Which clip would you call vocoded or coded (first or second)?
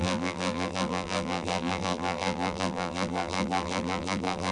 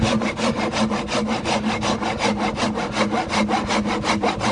first